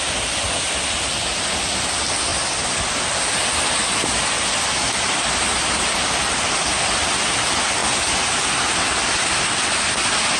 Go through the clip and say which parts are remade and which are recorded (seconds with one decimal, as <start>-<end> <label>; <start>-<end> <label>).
0.0-2.3 recorded; 2.3-2.9 remade; 2.9-4.1 recorded; 4.1-4.8 remade; 4.8-10.4 recorded